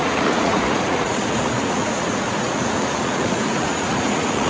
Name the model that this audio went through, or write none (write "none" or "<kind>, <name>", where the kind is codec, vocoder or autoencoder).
vocoder, Vocos